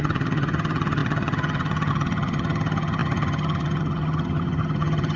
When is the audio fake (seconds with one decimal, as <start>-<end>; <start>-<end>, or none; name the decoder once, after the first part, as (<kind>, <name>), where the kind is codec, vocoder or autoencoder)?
0.0-5.2 (vocoder, HiFi-GAN)